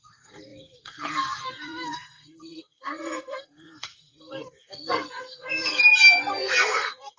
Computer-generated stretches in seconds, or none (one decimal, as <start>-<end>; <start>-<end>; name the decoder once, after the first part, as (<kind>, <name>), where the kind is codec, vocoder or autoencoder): 0.0-5.8 (codec, SNAC); 6.3-7.2